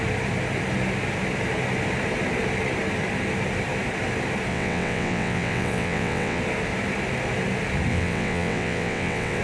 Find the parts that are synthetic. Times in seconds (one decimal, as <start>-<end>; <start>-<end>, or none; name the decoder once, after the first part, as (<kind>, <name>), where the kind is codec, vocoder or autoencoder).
4.5-6.4 (vocoder, WaveNeXt); 7.9-9.4